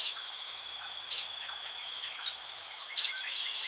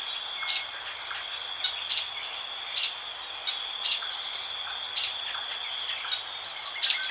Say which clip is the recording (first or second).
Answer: second